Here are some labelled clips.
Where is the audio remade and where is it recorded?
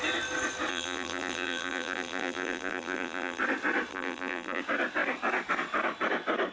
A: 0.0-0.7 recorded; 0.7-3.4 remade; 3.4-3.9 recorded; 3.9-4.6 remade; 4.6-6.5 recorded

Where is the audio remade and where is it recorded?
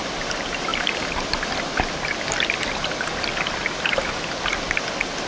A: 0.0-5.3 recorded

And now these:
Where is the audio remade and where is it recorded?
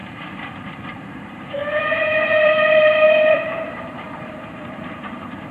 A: 0.0-5.5 remade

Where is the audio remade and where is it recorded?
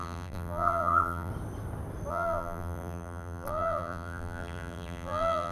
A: 0.0-1.3 remade; 1.3-2.1 recorded; 2.1-5.5 remade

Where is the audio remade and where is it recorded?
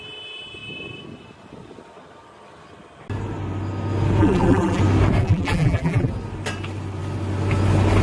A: 0.0-4.2 recorded; 4.2-4.8 remade; 4.8-5.2 recorded; 5.2-6.1 remade; 6.1-8.0 recorded